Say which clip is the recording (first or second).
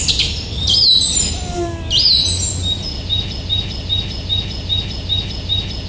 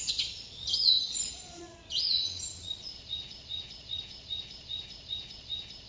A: first